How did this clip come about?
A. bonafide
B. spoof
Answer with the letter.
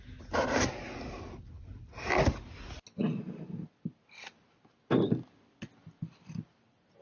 A